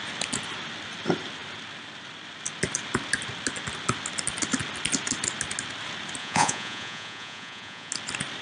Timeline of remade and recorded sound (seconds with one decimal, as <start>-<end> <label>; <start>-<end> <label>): 0.0-6.2 recorded; 6.2-7.9 remade; 7.9-8.4 recorded